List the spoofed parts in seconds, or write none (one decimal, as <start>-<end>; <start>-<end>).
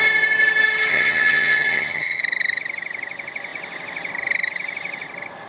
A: 0.9-2.2